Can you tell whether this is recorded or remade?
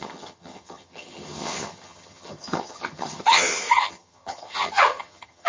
remade